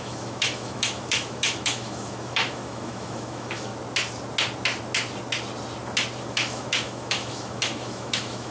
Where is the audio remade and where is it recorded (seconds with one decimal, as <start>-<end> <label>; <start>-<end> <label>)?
0.0-3.7 remade; 3.7-6.2 recorded; 6.2-8.5 remade